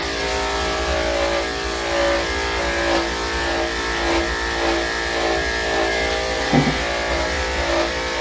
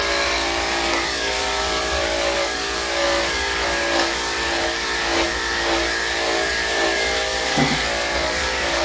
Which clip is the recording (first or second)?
first